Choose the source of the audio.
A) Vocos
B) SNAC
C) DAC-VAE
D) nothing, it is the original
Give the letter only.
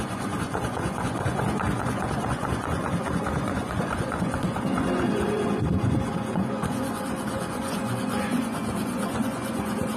A